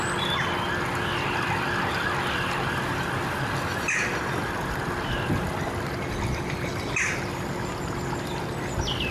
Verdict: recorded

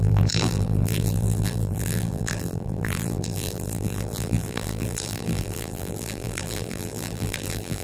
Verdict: remade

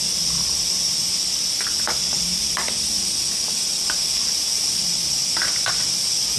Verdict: recorded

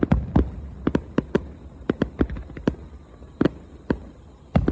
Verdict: recorded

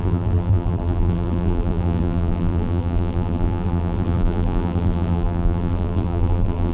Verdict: remade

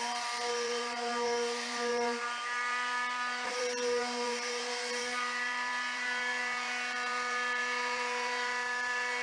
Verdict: remade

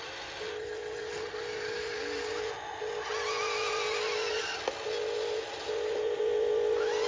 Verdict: recorded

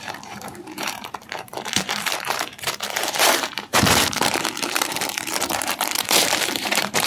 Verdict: remade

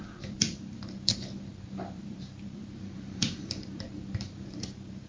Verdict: remade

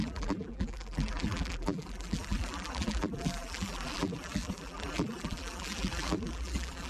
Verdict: remade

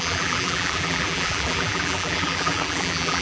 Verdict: remade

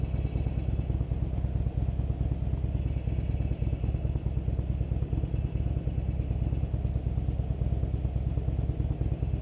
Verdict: recorded